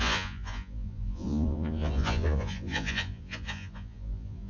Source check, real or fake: fake